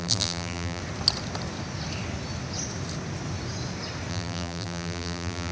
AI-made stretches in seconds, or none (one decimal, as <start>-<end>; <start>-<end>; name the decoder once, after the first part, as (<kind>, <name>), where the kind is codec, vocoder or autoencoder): 0.0-0.8 (vocoder, BigVGAN v2); 4.1-5.5